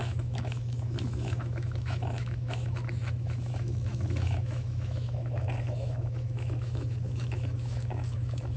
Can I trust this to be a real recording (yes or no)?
no